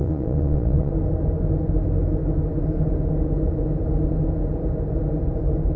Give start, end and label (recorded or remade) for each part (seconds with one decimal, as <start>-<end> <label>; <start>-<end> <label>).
0.0-0.9 remade; 0.9-5.8 recorded